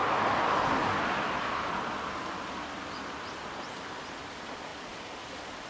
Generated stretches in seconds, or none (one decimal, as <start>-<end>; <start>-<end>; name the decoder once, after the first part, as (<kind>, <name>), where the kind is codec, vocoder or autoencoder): none